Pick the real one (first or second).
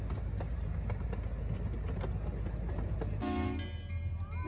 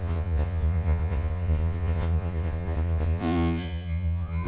first